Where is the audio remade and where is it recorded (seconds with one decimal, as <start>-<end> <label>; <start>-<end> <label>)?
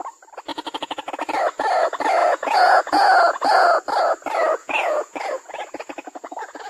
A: 0.0-0.5 recorded; 0.5-1.1 remade; 1.1-2.2 recorded; 2.2-3.8 remade; 3.8-4.6 recorded; 4.6-6.7 remade